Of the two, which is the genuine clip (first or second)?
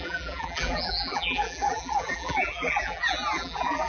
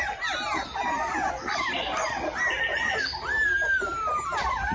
second